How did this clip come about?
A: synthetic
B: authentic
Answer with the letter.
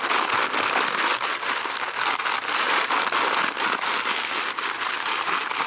B